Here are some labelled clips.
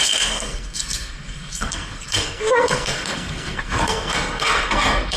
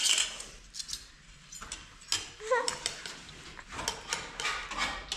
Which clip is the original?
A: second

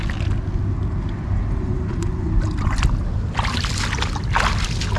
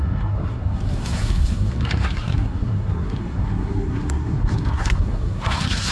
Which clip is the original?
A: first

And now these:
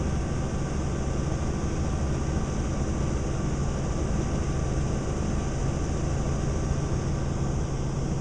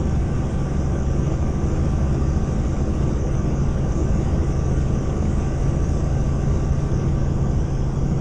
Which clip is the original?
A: first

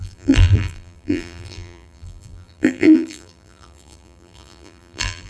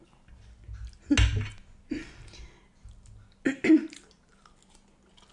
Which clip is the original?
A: second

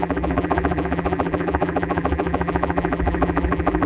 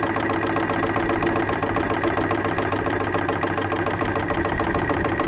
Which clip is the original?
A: second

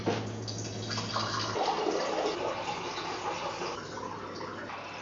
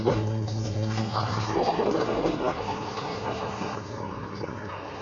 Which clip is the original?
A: first